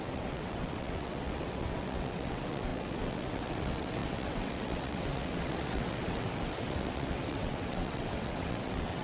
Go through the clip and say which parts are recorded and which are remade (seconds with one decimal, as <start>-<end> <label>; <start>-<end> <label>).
0.0-9.0 remade